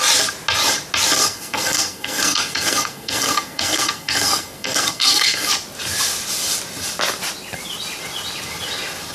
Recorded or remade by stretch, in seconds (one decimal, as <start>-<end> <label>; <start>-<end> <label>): 0.0-1.2 recorded; 1.2-5.5 remade; 5.5-9.1 recorded